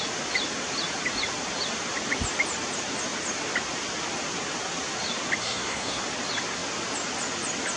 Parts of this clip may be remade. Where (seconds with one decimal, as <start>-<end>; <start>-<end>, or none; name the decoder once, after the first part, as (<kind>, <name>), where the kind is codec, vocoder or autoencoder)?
5.4-6.0 (codec, SNAC)